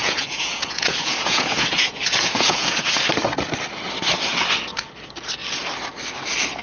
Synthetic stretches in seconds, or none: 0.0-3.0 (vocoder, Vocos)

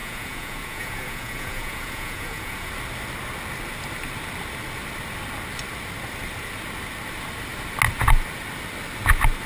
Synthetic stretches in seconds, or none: 0.0-2.7 (vocoder, Vocos)

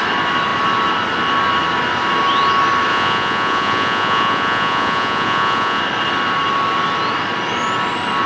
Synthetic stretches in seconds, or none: 2.9-5.8 (vocoder, Vocos)

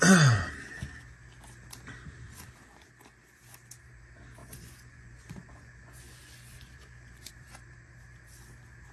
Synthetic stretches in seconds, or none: 4.4-7.3 (vocoder, Vocos)

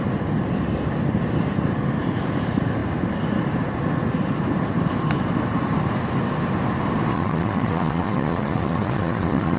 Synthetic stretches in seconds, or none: 7.1-9.6 (vocoder, Vocos)

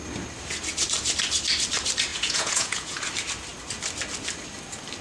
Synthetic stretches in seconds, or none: 2.1-3.1 (vocoder, Vocos)

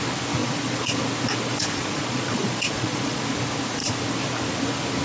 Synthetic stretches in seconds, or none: 0.4-1.0 (vocoder, Vocos); 1.5-3.2

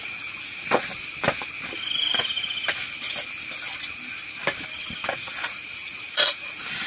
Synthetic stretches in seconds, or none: 0.0-0.9 (vocoder, Vocos); 5.0-6.9